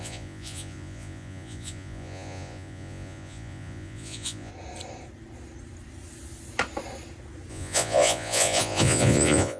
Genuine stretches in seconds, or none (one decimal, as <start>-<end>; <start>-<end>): 4.5-7.5